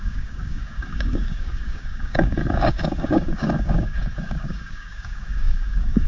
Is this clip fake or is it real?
fake